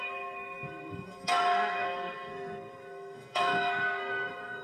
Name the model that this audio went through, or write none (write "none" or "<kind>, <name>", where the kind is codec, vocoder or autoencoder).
codec, SNAC